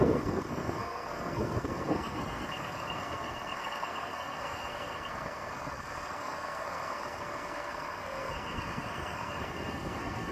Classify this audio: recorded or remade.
remade